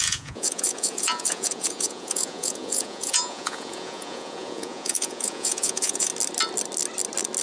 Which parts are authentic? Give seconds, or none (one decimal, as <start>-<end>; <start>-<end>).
6.1-7.4